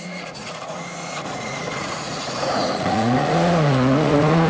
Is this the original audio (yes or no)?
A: no